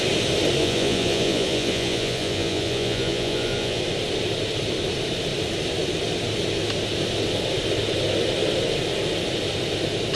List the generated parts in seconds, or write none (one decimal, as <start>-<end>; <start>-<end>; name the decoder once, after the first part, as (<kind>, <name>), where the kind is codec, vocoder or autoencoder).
0.6-3.8 (vocoder, Vocos)